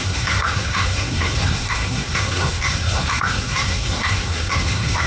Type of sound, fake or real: fake